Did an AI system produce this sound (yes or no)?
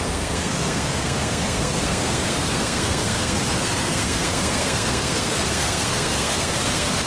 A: yes